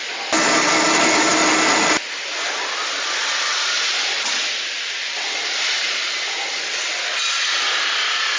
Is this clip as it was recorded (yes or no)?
yes